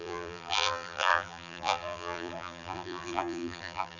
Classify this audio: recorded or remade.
remade